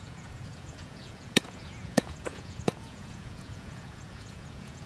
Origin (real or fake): fake